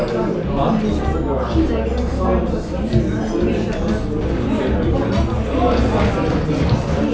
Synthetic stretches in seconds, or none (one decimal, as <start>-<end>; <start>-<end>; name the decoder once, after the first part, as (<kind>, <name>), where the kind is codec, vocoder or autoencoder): none